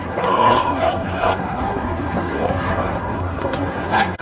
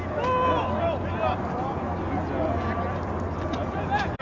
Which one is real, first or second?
second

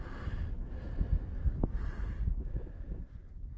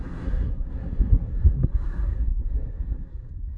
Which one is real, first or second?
first